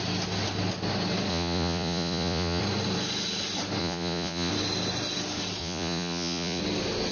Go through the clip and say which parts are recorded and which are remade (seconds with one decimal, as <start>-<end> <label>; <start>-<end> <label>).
0.0-1.3 recorded; 1.3-2.6 remade; 2.6-3.8 recorded; 3.8-4.5 remade; 4.5-5.6 recorded; 5.6-6.6 remade; 6.6-7.1 recorded